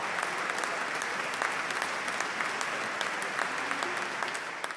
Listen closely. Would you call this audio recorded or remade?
recorded